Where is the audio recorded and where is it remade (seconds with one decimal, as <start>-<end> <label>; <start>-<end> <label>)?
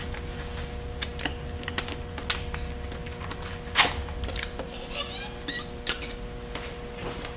0.0-7.4 recorded